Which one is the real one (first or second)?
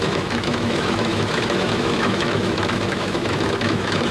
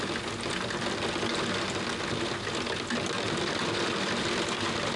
second